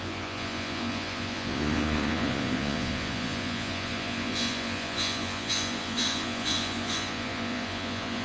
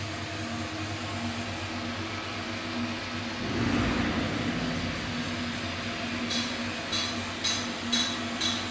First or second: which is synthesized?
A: first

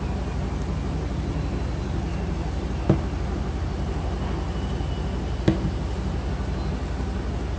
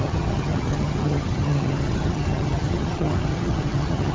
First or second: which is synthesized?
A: second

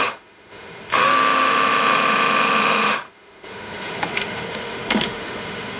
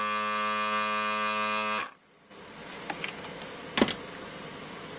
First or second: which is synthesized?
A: first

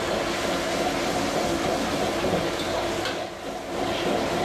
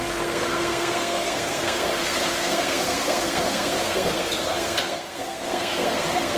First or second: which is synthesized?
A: second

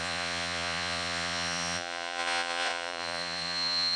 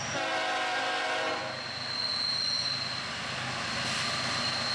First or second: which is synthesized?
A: first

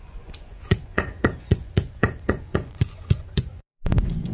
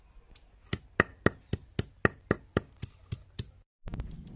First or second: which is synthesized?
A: first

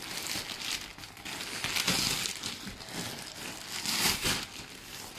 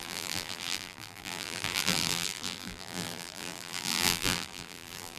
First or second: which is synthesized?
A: second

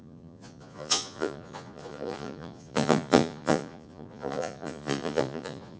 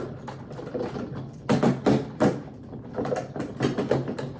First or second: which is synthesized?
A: first